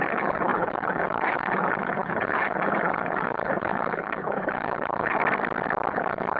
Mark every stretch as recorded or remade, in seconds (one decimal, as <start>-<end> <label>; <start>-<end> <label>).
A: 0.0-5.2 remade; 5.2-5.9 recorded; 5.9-6.4 remade